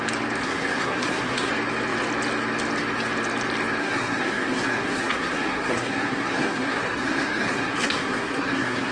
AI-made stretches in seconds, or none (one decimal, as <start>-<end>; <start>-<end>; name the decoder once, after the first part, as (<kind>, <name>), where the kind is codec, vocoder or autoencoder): 0.4-1.5 (codec, SNAC); 3.8-8.9